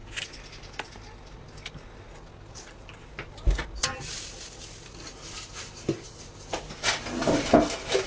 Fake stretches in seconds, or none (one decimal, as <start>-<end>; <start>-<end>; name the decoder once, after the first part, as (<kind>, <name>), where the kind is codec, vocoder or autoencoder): none